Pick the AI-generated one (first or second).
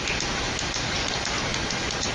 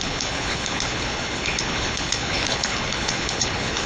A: second